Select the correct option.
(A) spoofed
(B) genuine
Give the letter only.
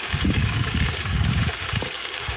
A